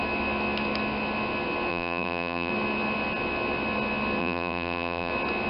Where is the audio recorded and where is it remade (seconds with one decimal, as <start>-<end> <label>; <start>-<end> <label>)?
0.0-1.7 recorded; 1.7-2.5 remade; 2.5-4.2 recorded; 4.2-5.1 remade; 5.1-5.5 recorded